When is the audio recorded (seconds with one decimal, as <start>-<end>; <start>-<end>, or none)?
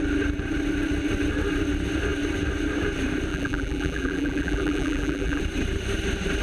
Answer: 0.0-3.3; 5.4-6.4